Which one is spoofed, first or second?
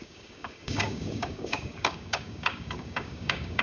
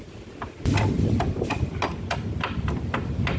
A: first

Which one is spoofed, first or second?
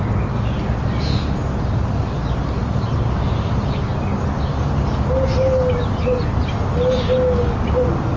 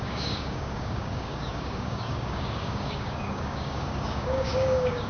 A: second